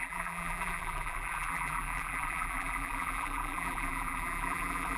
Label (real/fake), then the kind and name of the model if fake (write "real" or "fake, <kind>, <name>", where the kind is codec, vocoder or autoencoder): fake, vocoder, BigVGAN v2